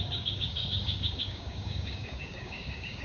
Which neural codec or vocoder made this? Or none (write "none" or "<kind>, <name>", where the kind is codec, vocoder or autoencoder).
codec, DAC